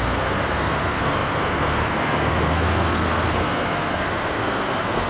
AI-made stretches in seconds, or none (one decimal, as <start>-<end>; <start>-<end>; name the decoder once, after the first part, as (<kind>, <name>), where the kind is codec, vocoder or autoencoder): 0.0-5.1 (codec, SNAC)